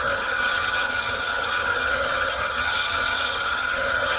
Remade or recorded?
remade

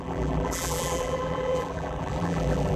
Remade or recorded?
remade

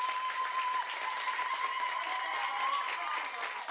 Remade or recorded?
recorded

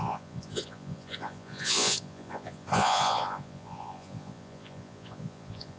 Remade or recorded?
remade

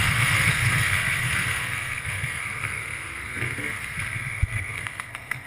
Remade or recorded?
remade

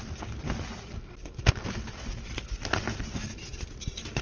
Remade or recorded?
recorded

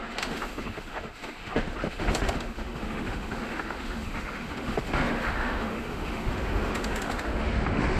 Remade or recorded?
remade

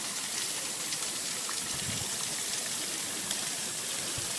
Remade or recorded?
recorded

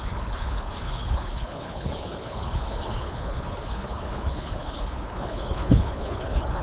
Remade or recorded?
remade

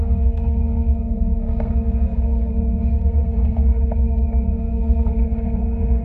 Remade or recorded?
remade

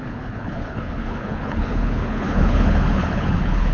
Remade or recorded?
remade